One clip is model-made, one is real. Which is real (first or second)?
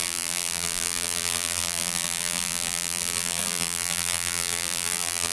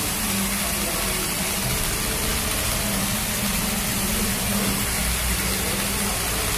second